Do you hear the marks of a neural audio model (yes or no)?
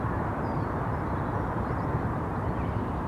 no